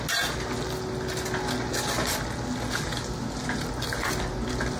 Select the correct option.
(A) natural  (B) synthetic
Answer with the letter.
A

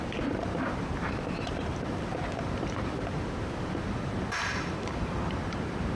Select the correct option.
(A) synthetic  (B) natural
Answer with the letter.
A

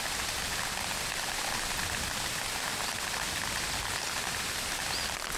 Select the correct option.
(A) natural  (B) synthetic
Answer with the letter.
A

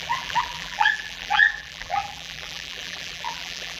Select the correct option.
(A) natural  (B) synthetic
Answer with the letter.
B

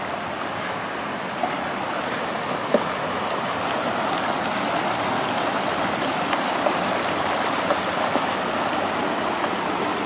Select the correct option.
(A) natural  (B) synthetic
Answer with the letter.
A